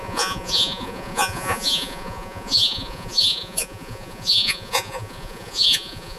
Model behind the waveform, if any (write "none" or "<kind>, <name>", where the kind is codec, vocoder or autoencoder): vocoder, Vocos